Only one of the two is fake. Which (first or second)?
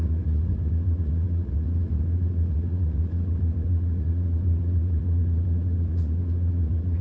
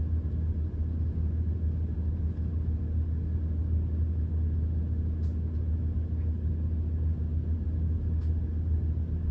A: first